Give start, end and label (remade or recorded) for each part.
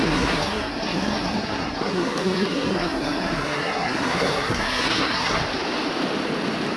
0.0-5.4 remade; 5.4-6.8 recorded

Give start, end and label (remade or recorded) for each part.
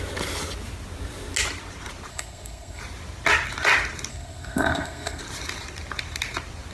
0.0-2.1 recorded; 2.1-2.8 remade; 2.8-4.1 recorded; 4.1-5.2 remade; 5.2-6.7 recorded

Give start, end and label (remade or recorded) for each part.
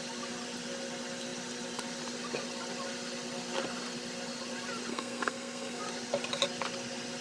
0.0-4.9 recorded; 4.9-5.8 remade; 5.8-7.2 recorded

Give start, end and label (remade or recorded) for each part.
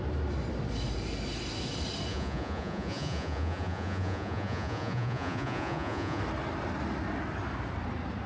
0.0-2.1 recorded; 2.1-6.2 remade; 6.2-8.3 recorded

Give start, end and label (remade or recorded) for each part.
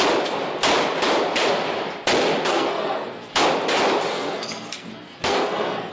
0.0-2.5 recorded; 2.5-3.3 remade; 3.3-4.1 recorded; 4.1-5.9 remade